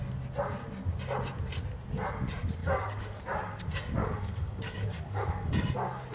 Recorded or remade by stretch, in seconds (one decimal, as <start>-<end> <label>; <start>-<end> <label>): 0.0-2.6 recorded; 2.6-3.2 remade; 3.2-4.0 recorded; 4.0-5.5 remade; 5.5-6.1 recorded